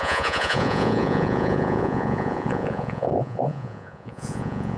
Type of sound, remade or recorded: remade